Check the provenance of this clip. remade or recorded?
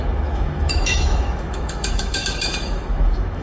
remade